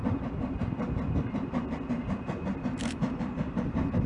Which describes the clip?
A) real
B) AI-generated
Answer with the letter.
A